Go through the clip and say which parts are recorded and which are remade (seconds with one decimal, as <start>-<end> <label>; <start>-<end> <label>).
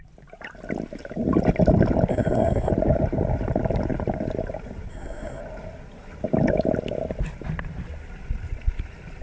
0.0-2.1 recorded; 2.1-2.7 remade; 2.7-4.9 recorded; 4.9-5.4 remade; 5.4-9.2 recorded